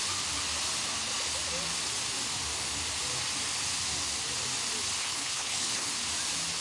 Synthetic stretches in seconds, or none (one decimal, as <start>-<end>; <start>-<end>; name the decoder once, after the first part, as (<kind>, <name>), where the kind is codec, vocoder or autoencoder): 5.0-5.9 (codec, HILCodec)